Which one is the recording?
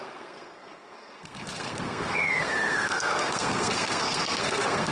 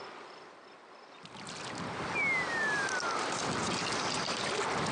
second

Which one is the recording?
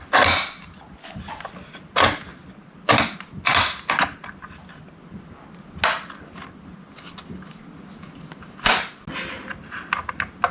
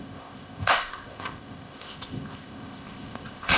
first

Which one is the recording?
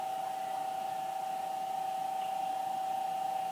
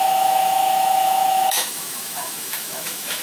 first